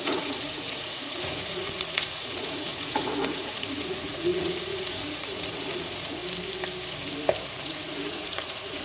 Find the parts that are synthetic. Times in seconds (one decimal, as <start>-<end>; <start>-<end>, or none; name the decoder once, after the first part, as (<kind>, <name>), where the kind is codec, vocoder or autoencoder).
0.0-6.2 (vocoder, Vocos); 7.6-8.8